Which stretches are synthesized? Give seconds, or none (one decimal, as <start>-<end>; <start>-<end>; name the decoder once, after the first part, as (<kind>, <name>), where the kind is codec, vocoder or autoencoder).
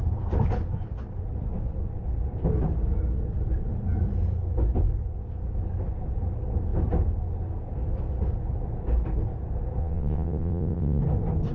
9.8-11.0 (vocoder, WaveNeXt)